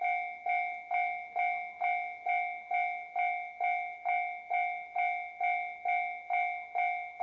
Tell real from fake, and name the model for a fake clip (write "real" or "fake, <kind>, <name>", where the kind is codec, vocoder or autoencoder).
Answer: real